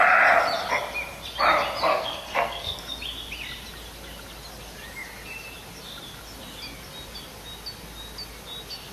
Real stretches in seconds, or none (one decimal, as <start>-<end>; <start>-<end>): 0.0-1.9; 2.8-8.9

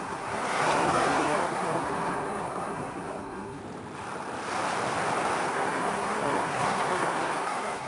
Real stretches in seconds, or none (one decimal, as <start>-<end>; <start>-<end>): 3.6-5.5

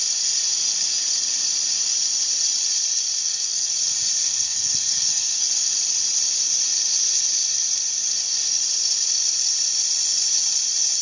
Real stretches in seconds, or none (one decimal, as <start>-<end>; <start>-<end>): 0.0-3.2; 3.7-4.2; 5.5-11.0

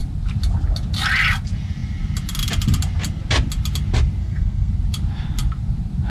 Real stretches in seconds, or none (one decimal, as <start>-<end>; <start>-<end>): 0.0-4.2; 4.7-6.1

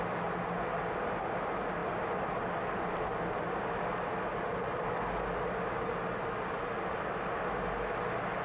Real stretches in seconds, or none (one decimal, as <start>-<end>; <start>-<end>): 0.0-8.4

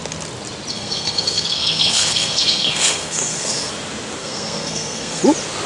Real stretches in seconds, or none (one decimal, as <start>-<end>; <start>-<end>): 0.0-0.7; 3.7-4.2; 5.2-5.7

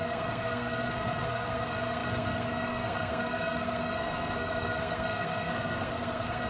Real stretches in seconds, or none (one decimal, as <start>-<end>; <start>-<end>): none